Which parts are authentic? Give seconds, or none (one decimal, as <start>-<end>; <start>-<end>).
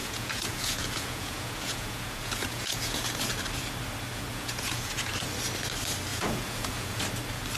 3.1-4.3; 5.1-6.1; 7.0-7.6